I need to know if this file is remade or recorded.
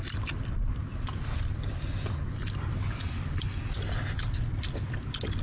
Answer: recorded